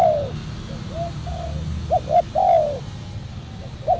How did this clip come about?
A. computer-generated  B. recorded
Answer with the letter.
B